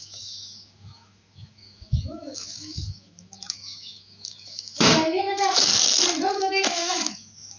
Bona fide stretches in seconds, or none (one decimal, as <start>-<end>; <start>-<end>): 5.7-6.3